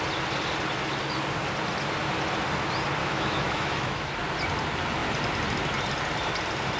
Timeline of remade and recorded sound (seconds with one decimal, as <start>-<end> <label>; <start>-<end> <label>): 0.0-3.0 recorded; 3.0-4.1 remade; 4.1-6.8 recorded